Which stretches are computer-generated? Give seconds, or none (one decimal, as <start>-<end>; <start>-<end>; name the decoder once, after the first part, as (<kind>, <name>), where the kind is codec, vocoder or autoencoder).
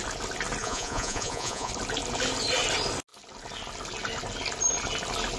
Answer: 0.6-1.7 (vocoder, Vocos)